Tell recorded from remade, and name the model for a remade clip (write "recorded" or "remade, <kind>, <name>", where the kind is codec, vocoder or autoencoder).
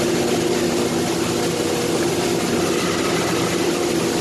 recorded